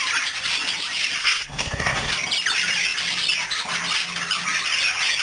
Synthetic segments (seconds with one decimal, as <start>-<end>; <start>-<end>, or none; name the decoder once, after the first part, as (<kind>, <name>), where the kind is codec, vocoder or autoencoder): 1.2-2.1 (codec, SNAC)